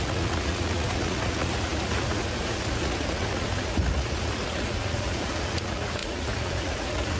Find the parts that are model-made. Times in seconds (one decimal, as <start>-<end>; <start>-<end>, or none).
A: 0.0-7.2